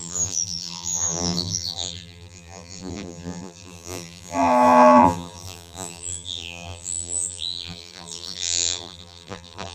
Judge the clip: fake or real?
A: fake